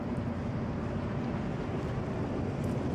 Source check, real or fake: fake